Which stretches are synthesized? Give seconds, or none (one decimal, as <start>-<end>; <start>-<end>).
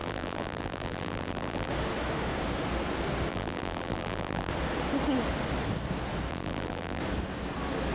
0.0-1.7; 3.3-4.5; 6.3-7.0